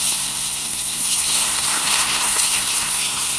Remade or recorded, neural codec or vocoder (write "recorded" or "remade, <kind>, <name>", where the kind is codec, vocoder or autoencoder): remade, codec, SNAC